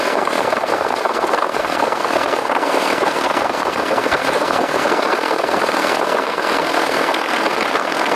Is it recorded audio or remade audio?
remade